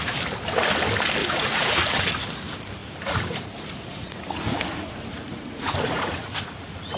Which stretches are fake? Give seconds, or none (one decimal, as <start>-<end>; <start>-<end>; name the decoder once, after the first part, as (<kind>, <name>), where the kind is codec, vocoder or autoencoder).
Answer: 1.2-2.1 (vocoder, Vocos); 2.8-7.0